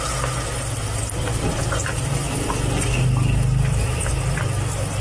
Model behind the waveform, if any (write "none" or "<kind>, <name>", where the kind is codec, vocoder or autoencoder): none